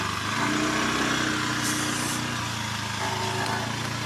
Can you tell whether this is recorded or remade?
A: recorded